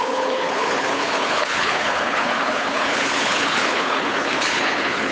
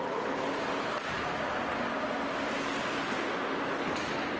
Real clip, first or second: second